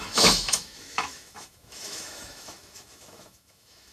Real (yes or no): no